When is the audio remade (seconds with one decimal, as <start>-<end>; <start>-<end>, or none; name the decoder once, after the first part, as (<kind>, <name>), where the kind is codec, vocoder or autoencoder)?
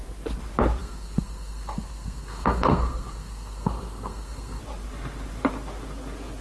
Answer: 0.8-4.6 (codec, SNAC)